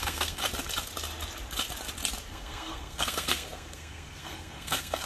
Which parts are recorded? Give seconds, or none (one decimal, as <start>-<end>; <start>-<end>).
0.4-2.3